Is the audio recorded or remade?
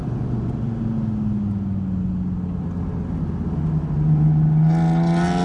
recorded